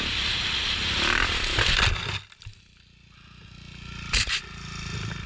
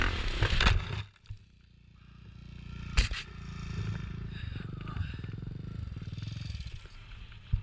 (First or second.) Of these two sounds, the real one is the second